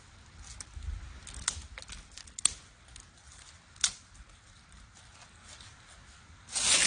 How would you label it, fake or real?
real